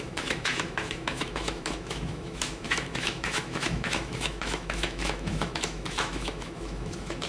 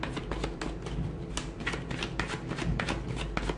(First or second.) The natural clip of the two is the second